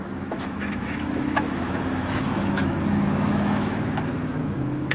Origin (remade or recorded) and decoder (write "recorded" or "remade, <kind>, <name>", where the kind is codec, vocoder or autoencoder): remade, autoencoder, DAC-VAE